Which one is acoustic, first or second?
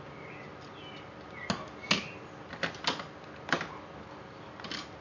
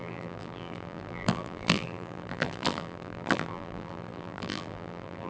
first